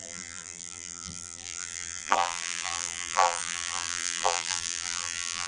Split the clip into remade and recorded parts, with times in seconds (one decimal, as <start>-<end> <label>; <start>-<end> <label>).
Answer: 0.0-5.5 remade